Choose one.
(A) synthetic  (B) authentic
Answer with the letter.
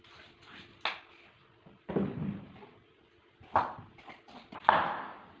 B